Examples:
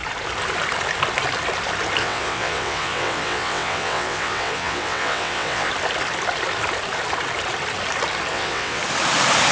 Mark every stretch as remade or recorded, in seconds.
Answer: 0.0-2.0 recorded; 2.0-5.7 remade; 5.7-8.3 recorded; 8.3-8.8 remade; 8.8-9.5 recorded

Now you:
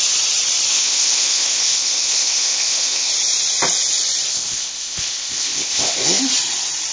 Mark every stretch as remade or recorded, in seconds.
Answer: 0.0-0.7 recorded; 0.7-3.1 remade; 3.1-4.3 recorded; 4.3-6.2 remade; 6.2-6.9 recorded

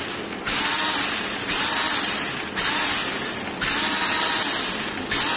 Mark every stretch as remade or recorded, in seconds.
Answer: 0.0-5.4 recorded